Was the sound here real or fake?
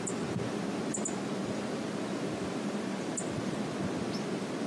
real